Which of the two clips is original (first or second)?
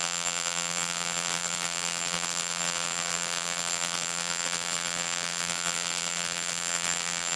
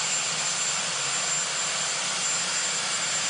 second